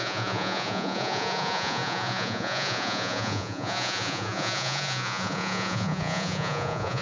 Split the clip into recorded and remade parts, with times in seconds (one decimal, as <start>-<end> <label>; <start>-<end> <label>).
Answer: 0.0-7.0 remade